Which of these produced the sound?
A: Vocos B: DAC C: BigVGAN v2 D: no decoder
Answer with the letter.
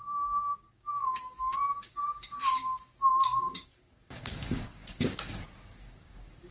B